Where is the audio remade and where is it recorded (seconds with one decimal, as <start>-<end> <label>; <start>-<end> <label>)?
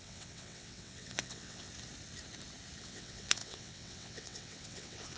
0.0-1.7 remade; 1.7-2.8 recorded; 2.8-5.2 remade